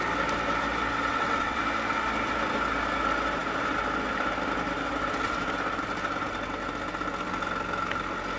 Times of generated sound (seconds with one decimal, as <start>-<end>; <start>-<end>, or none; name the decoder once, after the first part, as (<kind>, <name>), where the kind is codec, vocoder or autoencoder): 1.1-1.6 (vocoder, WaveNeXt)